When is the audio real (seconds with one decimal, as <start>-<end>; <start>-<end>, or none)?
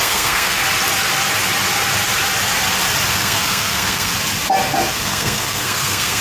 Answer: 0.6-3.1; 4.1-4.9